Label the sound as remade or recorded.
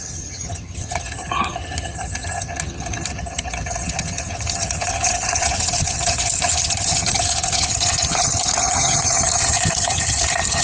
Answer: remade